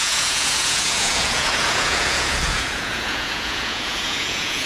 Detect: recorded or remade remade